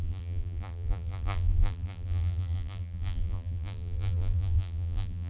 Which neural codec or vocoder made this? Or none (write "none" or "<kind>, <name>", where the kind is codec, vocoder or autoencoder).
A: vocoder, BigVGAN v2